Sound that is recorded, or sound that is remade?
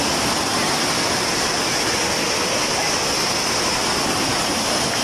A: recorded